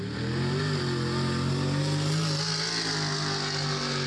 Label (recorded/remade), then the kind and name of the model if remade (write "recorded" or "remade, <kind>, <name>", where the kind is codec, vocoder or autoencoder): recorded